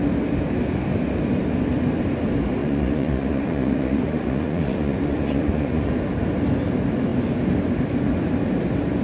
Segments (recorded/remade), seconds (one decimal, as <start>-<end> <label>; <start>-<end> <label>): 0.0-2.6 recorded; 2.6-5.9 remade; 5.9-9.0 recorded